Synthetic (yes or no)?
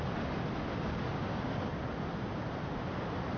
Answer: no